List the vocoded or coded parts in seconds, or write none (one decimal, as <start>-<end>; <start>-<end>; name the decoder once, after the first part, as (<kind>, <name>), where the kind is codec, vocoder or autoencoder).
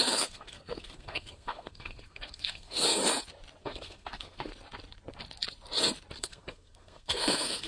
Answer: 0.0-3.0 (codec, SNAC); 3.6-4.5; 6.2-7.7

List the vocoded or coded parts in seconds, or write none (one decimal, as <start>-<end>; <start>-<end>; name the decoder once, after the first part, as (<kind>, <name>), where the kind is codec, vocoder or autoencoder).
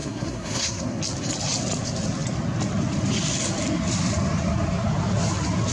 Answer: 0.0-1.0 (codec, SNAC)